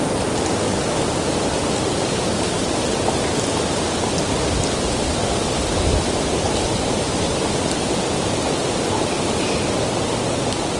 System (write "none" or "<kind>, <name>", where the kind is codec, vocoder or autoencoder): none